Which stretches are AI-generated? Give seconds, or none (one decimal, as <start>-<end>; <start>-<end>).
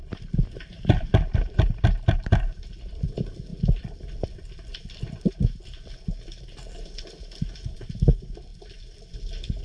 0.0-2.6